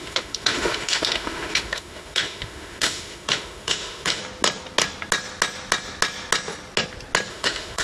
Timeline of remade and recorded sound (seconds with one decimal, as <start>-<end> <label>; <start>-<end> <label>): 0.0-4.2 remade; 4.2-7.3 recorded; 7.3-7.8 remade